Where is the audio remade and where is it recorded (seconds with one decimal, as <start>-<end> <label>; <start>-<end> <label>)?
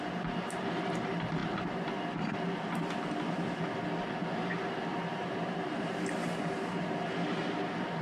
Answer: 0.0-4.9 recorded; 4.9-6.0 remade; 6.0-8.0 recorded